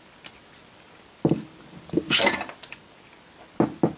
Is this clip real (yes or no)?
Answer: yes